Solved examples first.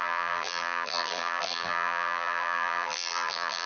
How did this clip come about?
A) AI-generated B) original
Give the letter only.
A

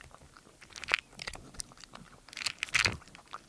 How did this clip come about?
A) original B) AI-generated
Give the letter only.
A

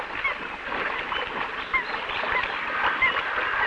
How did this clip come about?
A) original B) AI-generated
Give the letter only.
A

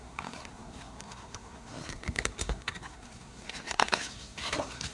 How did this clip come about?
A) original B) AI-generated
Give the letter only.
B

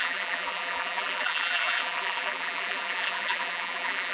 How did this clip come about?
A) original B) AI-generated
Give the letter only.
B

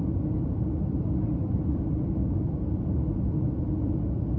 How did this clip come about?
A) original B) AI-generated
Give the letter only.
A